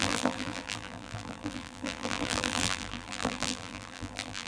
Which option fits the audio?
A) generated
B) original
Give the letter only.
A